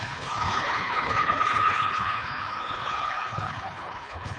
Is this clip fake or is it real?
fake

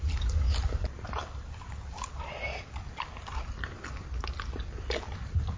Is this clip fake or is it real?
real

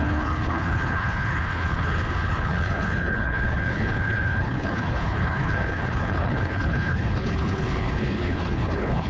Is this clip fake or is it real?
fake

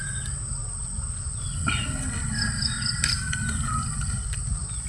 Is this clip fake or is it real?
real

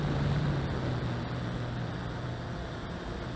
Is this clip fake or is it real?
real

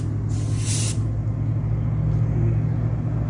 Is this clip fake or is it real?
real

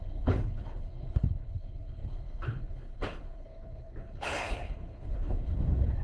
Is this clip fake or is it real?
fake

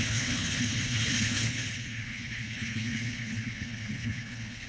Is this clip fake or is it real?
fake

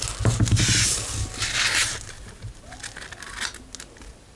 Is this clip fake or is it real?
real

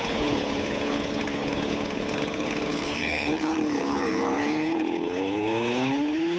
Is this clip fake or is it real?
fake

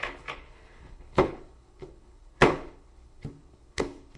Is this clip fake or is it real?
fake